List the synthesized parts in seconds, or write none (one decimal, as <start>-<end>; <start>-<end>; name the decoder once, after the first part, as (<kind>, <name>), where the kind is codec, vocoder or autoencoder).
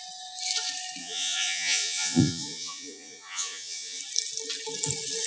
1.0-4.0 (vocoder, Vocos)